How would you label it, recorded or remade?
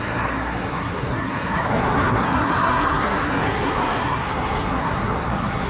remade